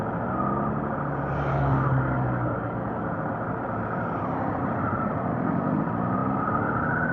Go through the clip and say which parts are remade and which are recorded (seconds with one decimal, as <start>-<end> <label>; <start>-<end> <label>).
0.0-1.5 recorded; 1.5-3.0 remade; 3.0-5.3 recorded; 5.3-5.8 remade; 5.8-7.1 recorded